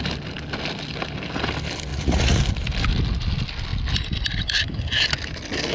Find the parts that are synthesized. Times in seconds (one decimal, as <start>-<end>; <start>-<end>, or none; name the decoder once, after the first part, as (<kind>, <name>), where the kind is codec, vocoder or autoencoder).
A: 1.9-2.4 (vocoder, Vocos)